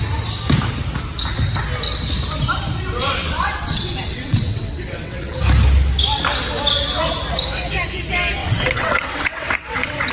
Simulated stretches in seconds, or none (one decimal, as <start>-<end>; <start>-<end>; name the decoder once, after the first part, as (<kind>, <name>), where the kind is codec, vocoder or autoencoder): 3.0-5.4 (vocoder, WaveNeXt); 8.4-10.1

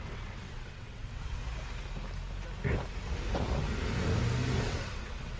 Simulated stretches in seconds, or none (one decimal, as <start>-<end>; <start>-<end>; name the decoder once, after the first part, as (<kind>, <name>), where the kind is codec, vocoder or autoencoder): 0.0-1.4 (vocoder, WaveNeXt); 4.6-5.4

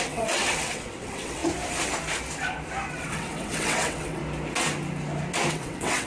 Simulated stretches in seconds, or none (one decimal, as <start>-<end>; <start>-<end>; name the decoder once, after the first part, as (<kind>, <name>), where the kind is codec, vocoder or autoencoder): 0.0-1.4 (vocoder, WaveNeXt); 2.9-4.2; 5.5-6.1

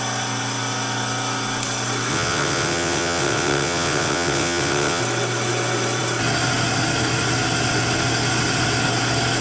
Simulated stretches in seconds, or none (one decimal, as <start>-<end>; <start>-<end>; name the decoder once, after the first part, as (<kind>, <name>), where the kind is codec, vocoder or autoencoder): 2.1-5.0 (vocoder, WaveNeXt)